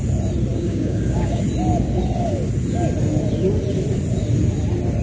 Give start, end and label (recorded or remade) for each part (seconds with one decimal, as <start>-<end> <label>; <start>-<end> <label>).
0.0-0.5 recorded; 0.5-1.4 remade; 1.4-5.0 recorded